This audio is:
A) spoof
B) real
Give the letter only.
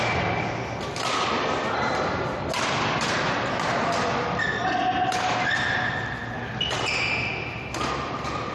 B